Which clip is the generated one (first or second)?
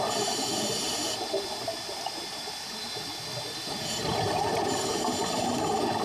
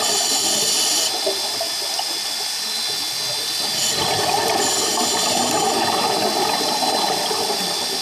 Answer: first